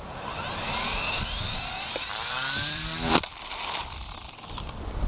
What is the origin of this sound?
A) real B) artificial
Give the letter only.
B